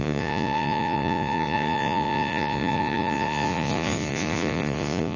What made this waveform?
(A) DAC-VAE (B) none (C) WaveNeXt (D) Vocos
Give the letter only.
D